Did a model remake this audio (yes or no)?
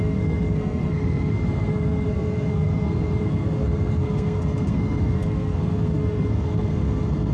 yes